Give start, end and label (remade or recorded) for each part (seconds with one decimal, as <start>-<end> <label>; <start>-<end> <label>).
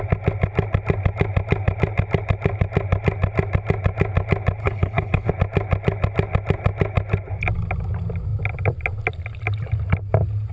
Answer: 0.0-4.6 recorded; 4.6-5.3 remade; 5.3-10.5 recorded